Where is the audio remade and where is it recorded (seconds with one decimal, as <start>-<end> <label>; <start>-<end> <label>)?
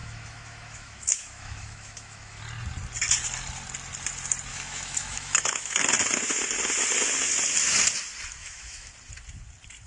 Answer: 0.0-2.4 remade; 2.4-4.5 recorded; 4.5-5.8 remade; 5.8-8.4 recorded; 8.4-8.9 remade; 8.9-9.9 recorded